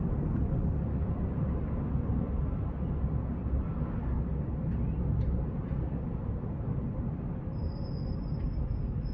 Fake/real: real